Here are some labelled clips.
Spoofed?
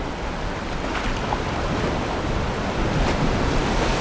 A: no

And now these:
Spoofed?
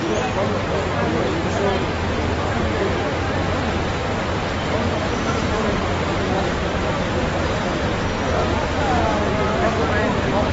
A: no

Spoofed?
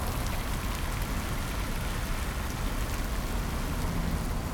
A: no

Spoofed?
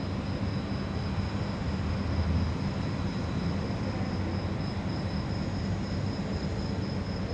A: no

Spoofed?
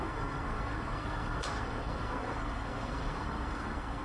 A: yes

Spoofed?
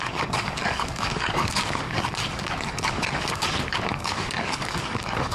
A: yes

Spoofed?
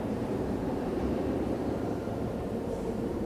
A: yes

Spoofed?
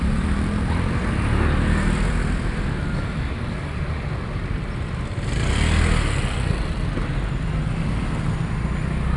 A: no